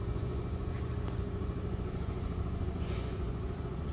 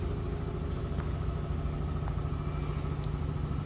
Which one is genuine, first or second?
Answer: second